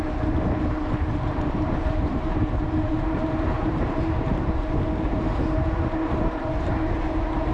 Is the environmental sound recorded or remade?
remade